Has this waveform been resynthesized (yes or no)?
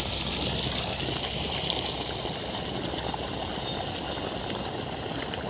no